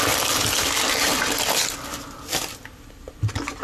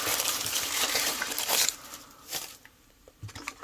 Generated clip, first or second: second